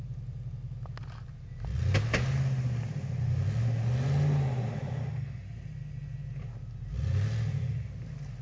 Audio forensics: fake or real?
real